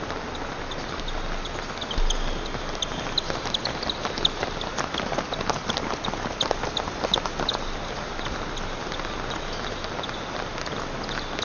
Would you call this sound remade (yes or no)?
no